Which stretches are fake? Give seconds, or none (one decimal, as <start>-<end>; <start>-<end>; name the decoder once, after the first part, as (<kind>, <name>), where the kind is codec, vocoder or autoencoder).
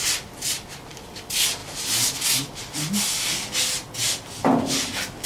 none